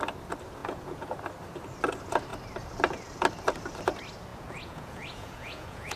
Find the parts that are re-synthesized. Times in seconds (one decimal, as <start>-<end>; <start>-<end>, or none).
0.6-1.2; 4.3-6.0